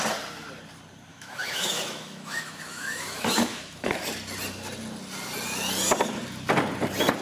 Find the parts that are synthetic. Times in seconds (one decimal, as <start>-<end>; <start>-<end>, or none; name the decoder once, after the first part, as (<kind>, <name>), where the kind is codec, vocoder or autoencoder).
1.1-3.9 (autoencoder, DAC-VAE)